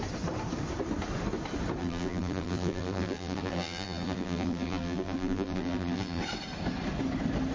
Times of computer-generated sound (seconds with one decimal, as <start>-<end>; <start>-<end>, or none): 1.8-6.2